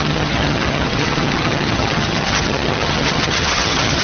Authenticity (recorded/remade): remade